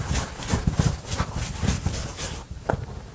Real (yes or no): yes